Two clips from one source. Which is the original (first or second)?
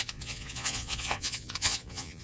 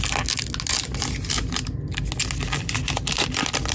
second